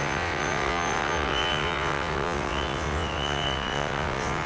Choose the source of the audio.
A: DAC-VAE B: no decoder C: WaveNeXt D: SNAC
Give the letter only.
C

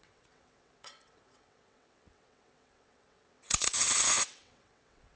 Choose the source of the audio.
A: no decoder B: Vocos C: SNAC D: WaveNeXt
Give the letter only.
D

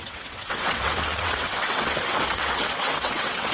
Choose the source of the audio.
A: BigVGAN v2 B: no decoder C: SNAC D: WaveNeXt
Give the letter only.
D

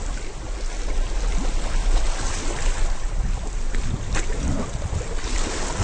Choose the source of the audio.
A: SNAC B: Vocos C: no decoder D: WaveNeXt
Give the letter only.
C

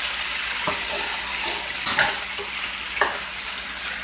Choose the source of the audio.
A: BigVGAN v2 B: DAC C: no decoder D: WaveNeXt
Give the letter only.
C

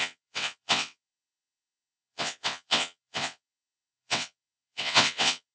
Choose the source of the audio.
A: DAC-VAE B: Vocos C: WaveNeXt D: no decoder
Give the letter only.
C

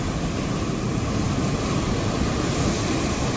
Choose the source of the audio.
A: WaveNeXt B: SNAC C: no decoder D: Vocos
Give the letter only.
C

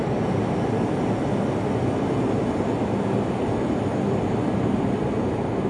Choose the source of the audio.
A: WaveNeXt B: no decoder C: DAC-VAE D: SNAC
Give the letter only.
B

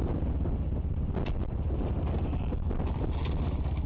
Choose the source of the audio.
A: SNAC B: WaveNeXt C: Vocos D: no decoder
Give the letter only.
D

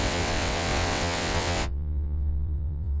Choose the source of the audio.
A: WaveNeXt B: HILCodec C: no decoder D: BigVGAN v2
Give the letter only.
A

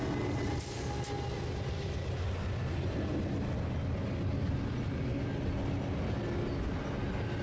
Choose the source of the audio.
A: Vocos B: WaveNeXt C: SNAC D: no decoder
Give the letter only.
D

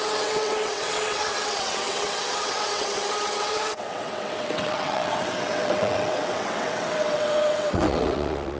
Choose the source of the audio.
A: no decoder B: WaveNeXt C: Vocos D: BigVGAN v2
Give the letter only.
B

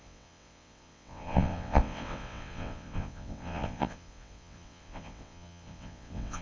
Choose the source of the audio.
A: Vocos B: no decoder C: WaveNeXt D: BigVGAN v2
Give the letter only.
C